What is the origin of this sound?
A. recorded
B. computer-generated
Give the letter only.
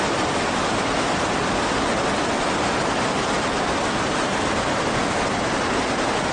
A